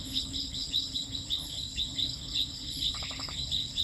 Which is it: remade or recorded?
remade